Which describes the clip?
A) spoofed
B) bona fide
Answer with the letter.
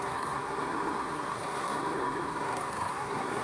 A